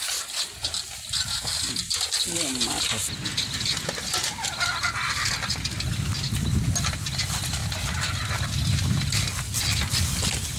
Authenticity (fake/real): real